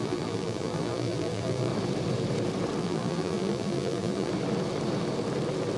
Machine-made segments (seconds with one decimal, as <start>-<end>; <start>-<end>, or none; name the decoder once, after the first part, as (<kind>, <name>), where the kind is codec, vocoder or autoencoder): 0.0-1.7 (vocoder, BigVGAN v2); 2.8-4.3